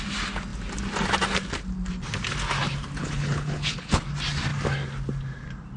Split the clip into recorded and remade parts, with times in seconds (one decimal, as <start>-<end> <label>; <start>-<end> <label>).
0.0-3.0 recorded; 3.0-4.0 remade; 4.0-5.8 recorded